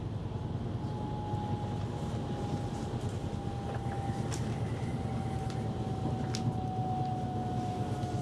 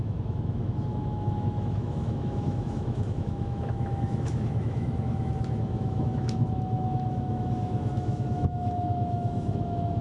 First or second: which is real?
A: first